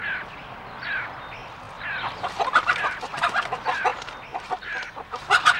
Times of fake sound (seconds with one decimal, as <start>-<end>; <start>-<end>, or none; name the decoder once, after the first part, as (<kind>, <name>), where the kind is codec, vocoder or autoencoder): 1.4-2.7 (vocoder, BigVGAN v2)